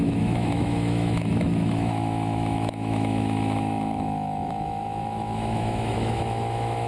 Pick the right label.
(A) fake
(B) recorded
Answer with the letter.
A